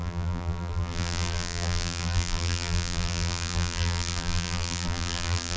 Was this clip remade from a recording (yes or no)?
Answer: yes